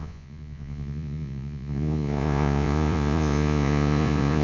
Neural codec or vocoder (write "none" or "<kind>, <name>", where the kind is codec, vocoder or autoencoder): vocoder, Vocos